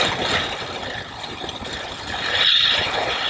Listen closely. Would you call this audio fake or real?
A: real